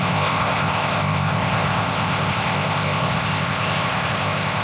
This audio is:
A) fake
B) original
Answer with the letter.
A